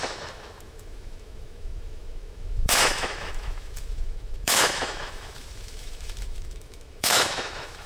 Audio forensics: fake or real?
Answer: fake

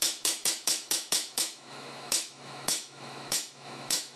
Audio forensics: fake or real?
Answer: fake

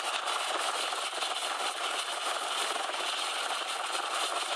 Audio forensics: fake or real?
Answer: real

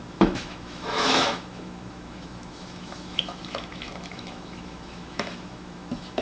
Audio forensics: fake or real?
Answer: fake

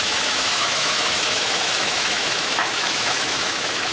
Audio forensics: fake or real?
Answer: fake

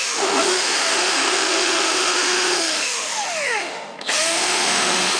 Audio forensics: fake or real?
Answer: fake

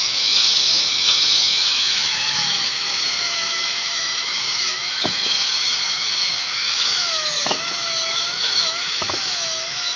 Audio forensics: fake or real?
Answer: fake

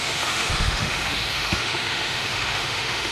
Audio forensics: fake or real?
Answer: fake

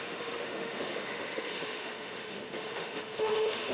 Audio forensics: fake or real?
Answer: fake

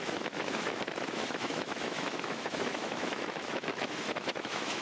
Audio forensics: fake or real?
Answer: fake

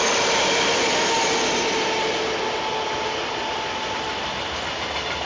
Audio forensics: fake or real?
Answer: real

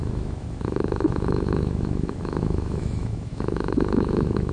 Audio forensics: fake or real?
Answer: fake